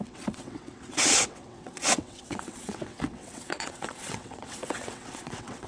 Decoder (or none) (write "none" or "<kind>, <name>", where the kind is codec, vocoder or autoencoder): vocoder, WaveNeXt